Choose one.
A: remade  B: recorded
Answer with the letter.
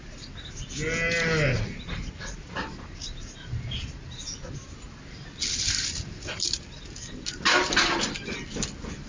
B